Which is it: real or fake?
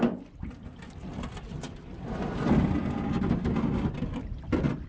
real